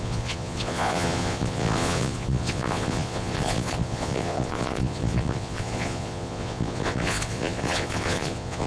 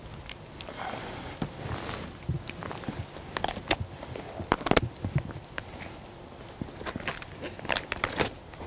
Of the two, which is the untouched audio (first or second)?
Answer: second